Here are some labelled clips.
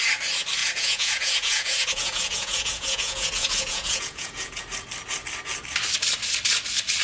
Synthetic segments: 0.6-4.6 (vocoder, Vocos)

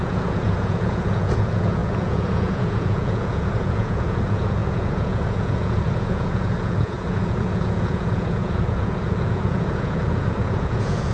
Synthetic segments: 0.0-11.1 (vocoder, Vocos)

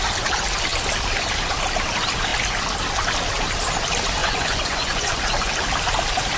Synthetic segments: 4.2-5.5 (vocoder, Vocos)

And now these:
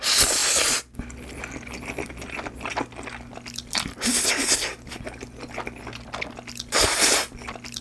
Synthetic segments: none